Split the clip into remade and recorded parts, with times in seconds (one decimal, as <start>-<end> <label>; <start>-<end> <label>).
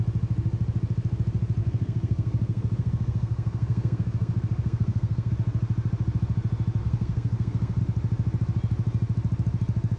0.0-1.6 recorded; 1.6-5.3 remade; 5.3-6.8 recorded; 6.8-7.8 remade; 7.8-10.0 recorded